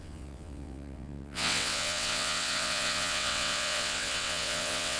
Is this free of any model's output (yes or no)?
no